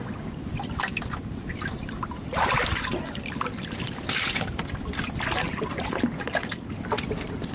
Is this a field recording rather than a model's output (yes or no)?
yes